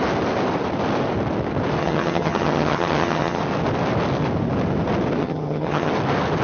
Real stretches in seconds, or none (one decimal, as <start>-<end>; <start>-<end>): 0.0-1.8; 3.4-5.2; 5.9-6.4